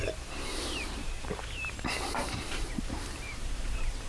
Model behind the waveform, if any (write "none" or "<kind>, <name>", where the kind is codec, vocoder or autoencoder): vocoder, BigVGAN v2